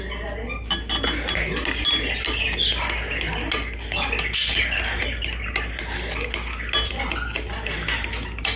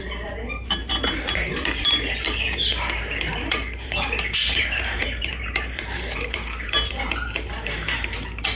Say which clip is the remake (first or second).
second